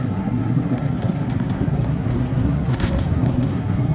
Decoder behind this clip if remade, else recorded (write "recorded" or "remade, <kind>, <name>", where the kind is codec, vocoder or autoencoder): remade, codec, SNAC